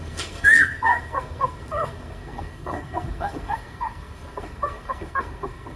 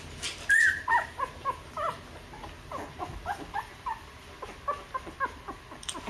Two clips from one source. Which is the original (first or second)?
second